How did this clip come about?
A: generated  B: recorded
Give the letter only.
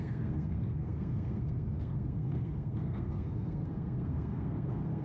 A